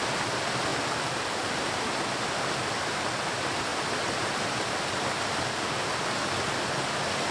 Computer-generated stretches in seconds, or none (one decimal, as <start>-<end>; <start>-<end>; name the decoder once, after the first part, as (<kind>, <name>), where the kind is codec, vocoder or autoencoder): none